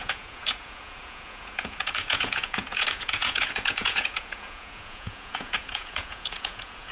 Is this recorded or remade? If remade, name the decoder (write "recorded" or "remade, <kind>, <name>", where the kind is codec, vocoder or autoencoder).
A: remade, vocoder, Vocos